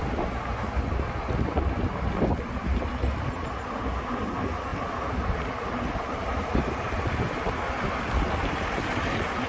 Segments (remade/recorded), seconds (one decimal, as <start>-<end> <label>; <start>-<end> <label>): 0.0-9.5 recorded